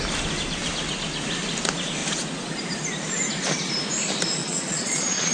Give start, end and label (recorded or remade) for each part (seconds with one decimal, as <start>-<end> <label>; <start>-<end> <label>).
0.0-4.4 recorded; 4.4-5.3 remade